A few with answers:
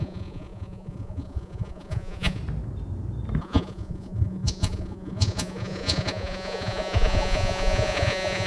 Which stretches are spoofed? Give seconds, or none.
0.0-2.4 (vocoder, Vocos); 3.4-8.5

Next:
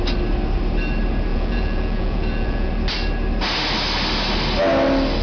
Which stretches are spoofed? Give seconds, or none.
1.3-2.7 (vocoder, Vocos)

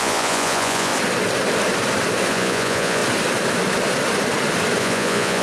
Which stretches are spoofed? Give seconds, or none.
0.0-0.9 (vocoder, Vocos); 2.3-3.0; 4.8-5.4